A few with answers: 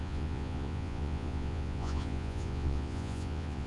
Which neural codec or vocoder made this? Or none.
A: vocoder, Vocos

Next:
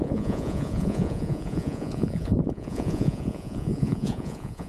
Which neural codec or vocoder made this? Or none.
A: vocoder, Vocos